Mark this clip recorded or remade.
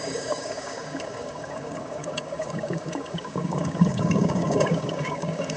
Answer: remade